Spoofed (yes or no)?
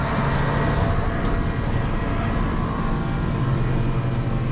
no